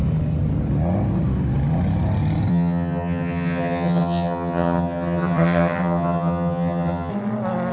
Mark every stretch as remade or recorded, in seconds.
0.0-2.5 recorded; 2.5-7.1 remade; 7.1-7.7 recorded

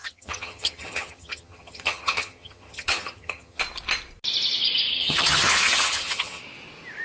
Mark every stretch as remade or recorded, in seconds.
0.0-3.6 remade; 3.6-4.9 recorded; 4.9-6.4 remade; 6.4-7.0 recorded

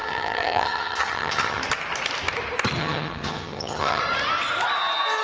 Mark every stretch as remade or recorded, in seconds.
0.0-1.6 remade; 1.6-2.8 recorded; 2.8-4.0 remade; 4.0-5.2 recorded

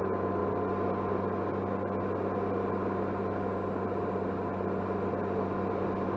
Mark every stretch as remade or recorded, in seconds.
0.0-6.2 recorded

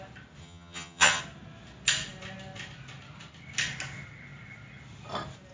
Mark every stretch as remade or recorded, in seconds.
0.0-0.4 recorded; 0.4-1.2 remade; 1.2-5.5 recorded

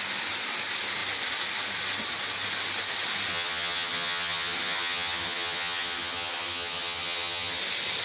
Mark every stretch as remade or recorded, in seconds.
0.0-3.3 recorded; 3.3-7.6 remade; 7.6-8.0 recorded

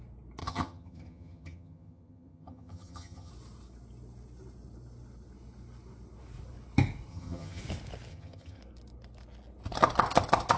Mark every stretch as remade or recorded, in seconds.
0.0-0.4 recorded; 0.4-3.3 remade; 3.3-7.1 recorded; 7.1-7.6 remade; 7.6-8.1 recorded; 8.1-8.6 remade; 8.6-10.6 recorded